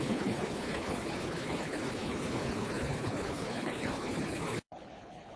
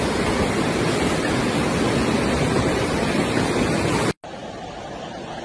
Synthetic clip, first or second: first